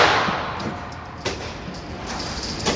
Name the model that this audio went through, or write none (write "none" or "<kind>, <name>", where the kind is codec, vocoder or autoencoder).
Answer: vocoder, BigVGAN v2